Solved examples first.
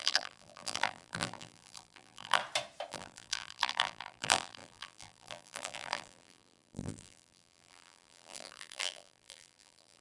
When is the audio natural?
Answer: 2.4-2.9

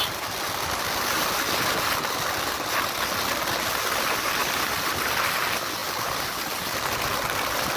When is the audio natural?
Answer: 0.0-4.4; 5.3-5.8; 6.3-7.8